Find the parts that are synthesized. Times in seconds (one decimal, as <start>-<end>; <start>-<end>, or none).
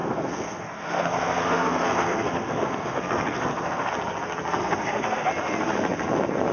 0.0-3.9; 4.6-5.3